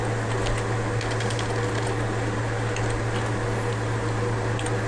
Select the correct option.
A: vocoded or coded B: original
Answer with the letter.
B